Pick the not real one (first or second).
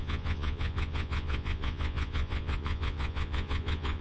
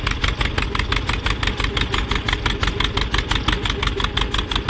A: first